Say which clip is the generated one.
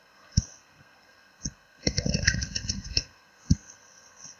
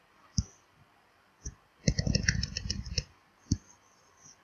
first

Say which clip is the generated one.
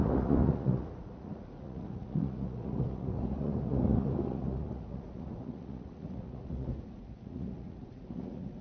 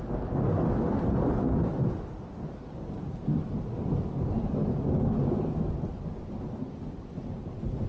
first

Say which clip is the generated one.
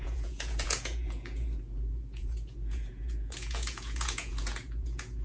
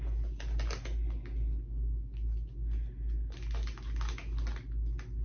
first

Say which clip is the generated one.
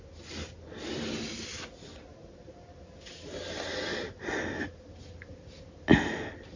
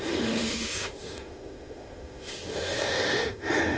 second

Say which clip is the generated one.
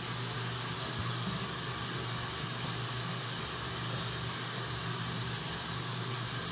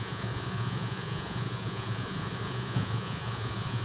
second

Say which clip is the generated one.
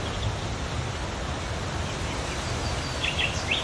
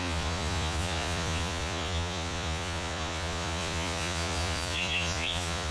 second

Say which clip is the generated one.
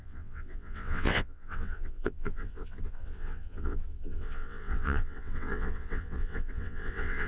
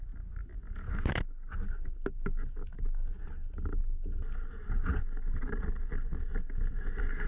first